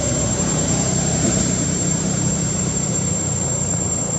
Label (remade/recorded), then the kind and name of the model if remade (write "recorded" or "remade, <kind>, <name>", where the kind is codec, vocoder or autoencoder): remade, vocoder, BigVGAN v2